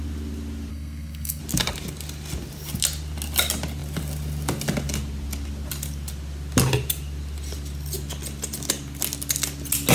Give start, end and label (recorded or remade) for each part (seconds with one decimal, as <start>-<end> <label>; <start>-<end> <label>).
0.0-0.7 recorded; 0.7-1.4 remade; 1.4-9.9 recorded

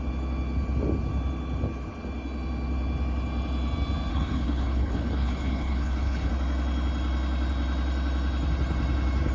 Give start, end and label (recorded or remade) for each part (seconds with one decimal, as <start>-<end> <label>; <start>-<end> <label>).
0.0-4.1 recorded; 4.1-6.3 remade; 6.3-9.3 recorded

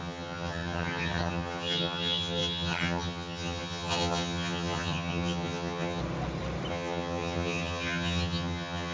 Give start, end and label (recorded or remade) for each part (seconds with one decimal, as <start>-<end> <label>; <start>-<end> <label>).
0.0-6.0 remade; 6.0-6.7 recorded; 6.7-8.9 remade

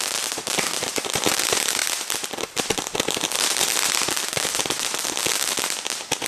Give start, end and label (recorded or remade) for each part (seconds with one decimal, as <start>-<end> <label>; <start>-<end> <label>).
0.0-6.3 remade

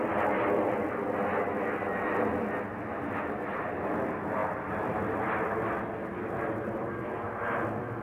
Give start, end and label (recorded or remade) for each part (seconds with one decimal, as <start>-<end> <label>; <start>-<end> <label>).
0.0-8.0 recorded